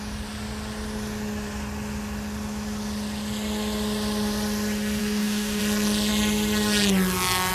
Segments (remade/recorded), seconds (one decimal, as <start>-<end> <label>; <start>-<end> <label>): 0.0-5.0 recorded; 5.0-5.6 remade; 5.6-7.5 recorded